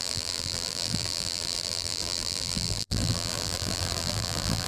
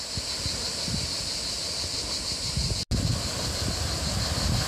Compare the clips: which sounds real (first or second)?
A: second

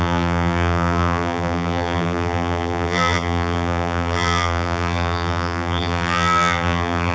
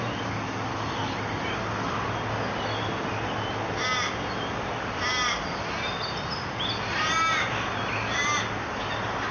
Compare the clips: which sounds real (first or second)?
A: second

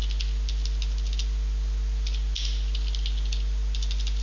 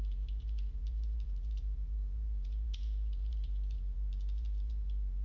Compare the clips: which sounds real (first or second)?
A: first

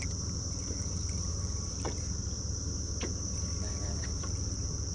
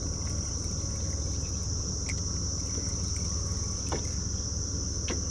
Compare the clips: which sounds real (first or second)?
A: second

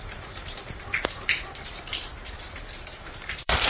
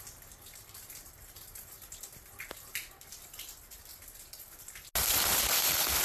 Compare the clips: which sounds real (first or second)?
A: second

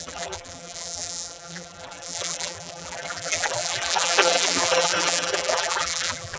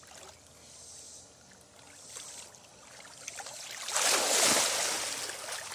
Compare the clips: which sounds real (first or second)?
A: second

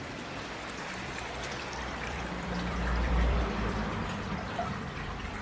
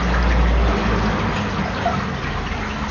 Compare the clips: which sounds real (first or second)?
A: second